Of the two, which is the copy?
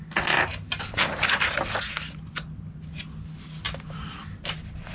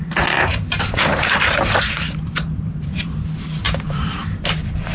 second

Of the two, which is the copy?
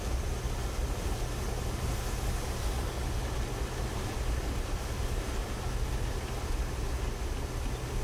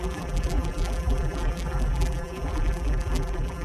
second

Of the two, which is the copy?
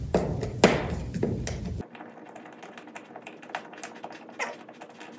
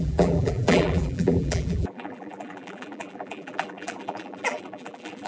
second